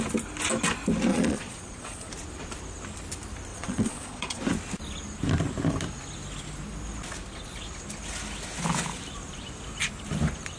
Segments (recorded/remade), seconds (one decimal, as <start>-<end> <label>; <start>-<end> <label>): 0.0-1.1 recorded; 1.1-2.1 remade; 2.1-3.5 recorded; 3.5-4.4 remade; 4.4-10.6 recorded